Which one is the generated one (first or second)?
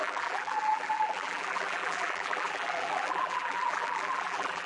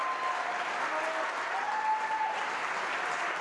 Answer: first